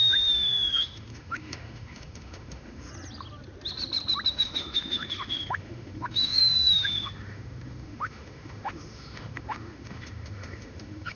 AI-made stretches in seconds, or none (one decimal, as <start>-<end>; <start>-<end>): 0.0-2.9; 4.3-11.2